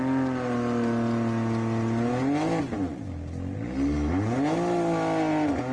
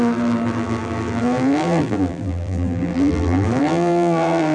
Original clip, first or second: first